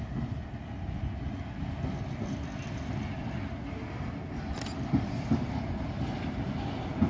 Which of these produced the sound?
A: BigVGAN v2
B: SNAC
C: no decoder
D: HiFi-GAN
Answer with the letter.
C